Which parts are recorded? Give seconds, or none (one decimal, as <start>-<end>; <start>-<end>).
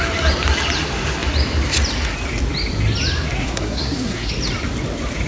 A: 0.0-3.4; 4.3-5.3